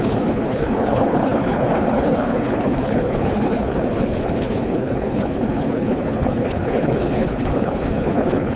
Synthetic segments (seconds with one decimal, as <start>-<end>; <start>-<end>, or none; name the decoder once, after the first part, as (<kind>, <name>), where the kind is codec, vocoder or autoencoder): 0.0-8.6 (codec, HILCodec)